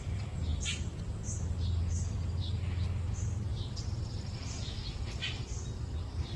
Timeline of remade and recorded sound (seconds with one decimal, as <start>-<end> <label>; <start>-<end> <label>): 0.0-3.5 recorded; 3.5-5.4 remade; 5.4-6.4 recorded